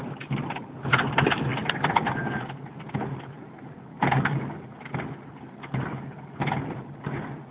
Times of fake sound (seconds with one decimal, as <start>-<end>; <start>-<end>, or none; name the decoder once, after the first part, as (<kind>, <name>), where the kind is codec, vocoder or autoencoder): none

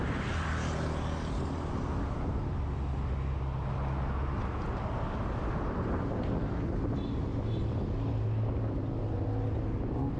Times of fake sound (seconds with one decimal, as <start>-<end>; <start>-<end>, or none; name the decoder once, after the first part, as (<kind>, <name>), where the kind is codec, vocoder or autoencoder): 7.3-7.8 (vocoder, BigVGAN v2)

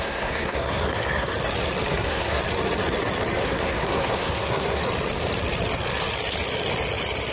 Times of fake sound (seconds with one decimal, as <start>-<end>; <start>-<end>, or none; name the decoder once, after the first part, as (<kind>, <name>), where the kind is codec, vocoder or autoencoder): 0.0-1.3 (codec, SNAC); 1.9-2.4; 3.4-4.8

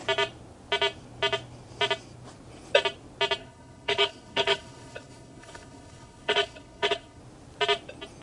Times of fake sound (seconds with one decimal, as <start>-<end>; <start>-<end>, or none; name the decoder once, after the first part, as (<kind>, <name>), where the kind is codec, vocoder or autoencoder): 3.4-7.2 (codec, HILCodec)

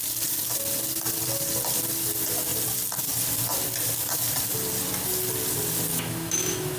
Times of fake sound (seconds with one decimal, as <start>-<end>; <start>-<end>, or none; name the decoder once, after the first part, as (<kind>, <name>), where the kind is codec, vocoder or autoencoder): 5.9-6.8 (autoencoder, DAC-VAE)

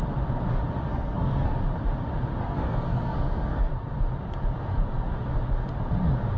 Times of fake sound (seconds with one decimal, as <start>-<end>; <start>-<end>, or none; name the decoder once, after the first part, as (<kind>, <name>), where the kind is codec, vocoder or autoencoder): 0.9-1.6 (codec, SNAC); 2.4-3.9; 4.7-5.3